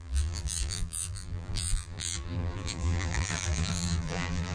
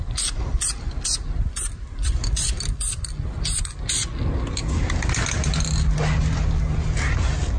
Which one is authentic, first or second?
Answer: second